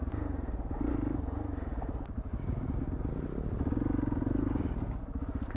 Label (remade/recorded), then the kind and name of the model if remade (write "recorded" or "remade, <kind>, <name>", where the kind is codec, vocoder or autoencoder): recorded